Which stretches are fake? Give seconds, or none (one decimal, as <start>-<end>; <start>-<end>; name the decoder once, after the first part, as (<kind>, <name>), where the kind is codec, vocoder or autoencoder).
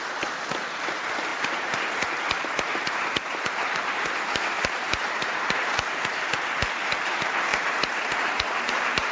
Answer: 1.3-5.9 (vocoder, BigVGAN v2); 7.5-9.1